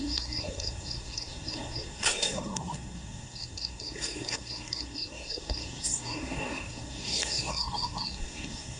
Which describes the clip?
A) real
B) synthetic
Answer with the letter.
B